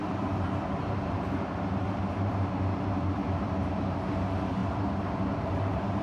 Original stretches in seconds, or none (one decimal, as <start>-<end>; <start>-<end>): 4.6-5.5